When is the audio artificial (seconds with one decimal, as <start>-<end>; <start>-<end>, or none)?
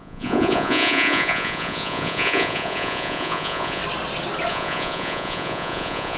0.0-3.8; 4.5-6.2